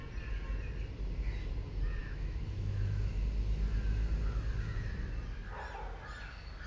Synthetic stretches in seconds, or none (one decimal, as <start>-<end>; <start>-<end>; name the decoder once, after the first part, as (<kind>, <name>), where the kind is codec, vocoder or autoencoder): 2.0-3.1 (autoencoder, DAC-VAE)